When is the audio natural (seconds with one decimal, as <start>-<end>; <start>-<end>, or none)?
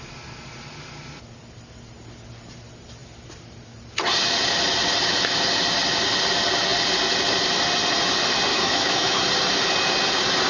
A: 0.0-8.5; 9.2-10.5